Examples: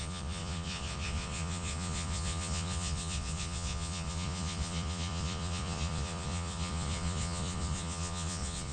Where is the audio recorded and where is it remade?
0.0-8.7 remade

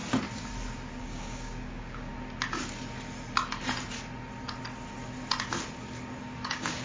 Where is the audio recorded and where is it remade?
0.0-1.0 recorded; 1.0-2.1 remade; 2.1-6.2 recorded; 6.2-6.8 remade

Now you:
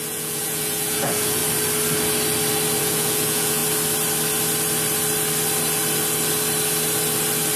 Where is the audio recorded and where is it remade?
0.0-1.4 remade; 1.4-2.8 recorded; 2.8-3.6 remade; 3.6-7.6 recorded

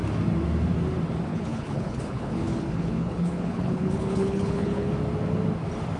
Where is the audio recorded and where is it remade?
0.0-1.3 recorded; 1.3-4.9 remade; 4.9-6.0 recorded

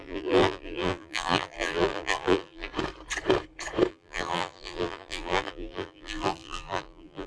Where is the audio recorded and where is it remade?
0.0-2.7 remade; 2.7-3.9 recorded; 3.9-7.3 remade